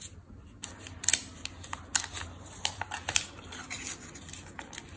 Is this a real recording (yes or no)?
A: yes